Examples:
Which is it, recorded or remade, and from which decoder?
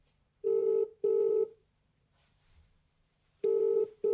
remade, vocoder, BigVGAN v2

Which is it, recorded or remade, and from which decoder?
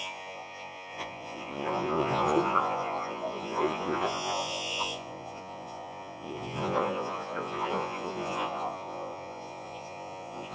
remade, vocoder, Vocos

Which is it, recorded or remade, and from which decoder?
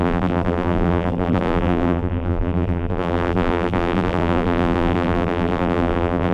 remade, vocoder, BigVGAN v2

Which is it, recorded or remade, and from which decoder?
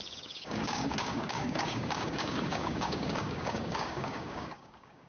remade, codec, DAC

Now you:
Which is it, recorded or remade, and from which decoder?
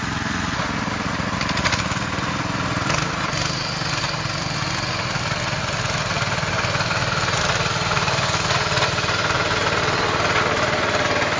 recorded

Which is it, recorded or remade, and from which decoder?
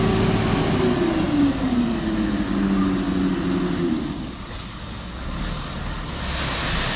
recorded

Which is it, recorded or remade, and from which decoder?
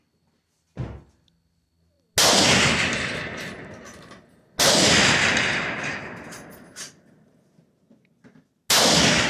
recorded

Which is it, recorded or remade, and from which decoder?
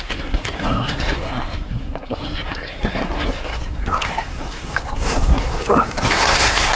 remade, codec, SNAC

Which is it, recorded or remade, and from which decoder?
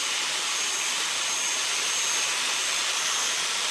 recorded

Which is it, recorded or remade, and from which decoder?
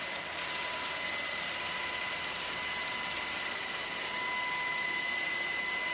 recorded